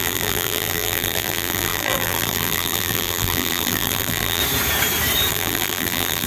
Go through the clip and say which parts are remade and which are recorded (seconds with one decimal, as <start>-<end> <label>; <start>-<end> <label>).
0.0-4.4 remade; 4.4-5.3 recorded; 5.3-6.3 remade

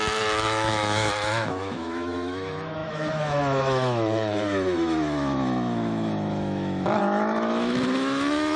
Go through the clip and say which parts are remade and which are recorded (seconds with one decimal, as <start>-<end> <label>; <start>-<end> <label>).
0.0-8.6 remade